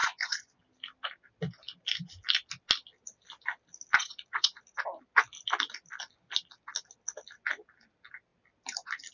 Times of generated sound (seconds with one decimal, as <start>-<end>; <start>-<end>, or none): 0.0-0.6; 3.9-4.6